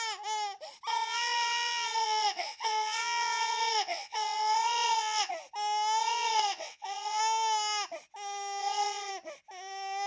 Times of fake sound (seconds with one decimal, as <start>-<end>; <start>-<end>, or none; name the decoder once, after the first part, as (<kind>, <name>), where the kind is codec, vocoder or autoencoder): 0.9-5.3 (vocoder, WaveNeXt); 6.0-7.2; 8.6-9.1